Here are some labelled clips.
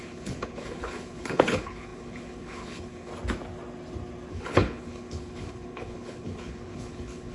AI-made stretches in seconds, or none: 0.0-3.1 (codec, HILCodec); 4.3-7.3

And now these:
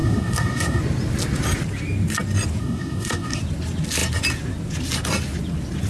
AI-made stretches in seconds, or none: 0.0-0.8 (codec, SNAC); 2.6-3.4

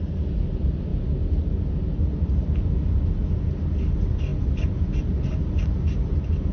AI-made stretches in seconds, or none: none

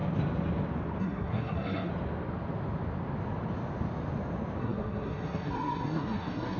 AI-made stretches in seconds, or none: 1.0-1.9 (codec, SNAC); 4.6-6.6

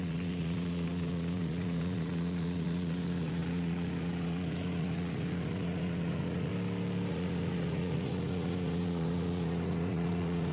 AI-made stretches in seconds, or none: 0.0-6.5 (vocoder, Vocos); 7.1-10.5

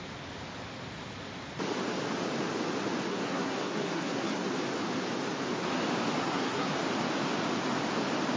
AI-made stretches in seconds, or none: 3.1-4.5 (codec, SNAC); 6.2-6.7

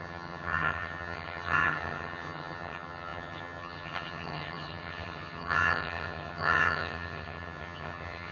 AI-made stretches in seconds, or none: 0.0-8.3 (vocoder, HiFi-GAN)

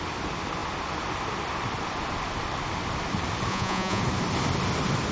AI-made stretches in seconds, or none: 3.5-4.0 (vocoder, Vocos)